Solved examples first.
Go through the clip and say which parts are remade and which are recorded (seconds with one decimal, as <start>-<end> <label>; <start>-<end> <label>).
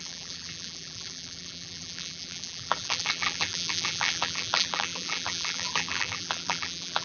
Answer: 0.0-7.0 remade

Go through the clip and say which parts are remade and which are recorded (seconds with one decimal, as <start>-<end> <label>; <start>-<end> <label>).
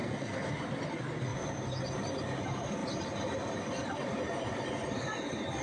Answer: 0.0-0.5 remade; 0.5-5.6 recorded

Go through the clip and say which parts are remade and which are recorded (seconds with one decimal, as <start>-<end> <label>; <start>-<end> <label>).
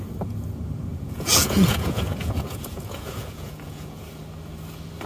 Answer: 0.0-0.9 recorded; 0.9-4.0 remade; 4.0-5.1 recorded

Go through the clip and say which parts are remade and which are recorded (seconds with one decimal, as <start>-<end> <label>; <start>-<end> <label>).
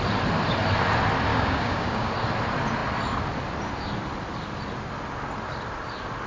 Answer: 0.0-1.3 recorded; 1.3-2.1 remade; 2.1-6.3 recorded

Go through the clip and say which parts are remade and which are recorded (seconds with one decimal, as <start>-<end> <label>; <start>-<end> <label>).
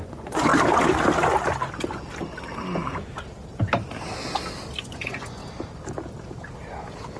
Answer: 0.0-0.5 remade; 0.5-4.8 recorded; 4.8-5.4 remade; 5.4-7.2 recorded